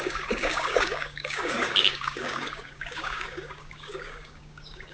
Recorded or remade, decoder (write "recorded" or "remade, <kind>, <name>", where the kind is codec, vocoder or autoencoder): remade, codec, DAC